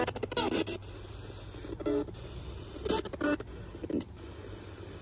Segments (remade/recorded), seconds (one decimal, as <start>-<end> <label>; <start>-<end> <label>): 0.0-5.0 recorded